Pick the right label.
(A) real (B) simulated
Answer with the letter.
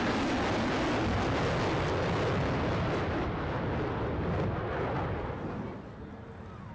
A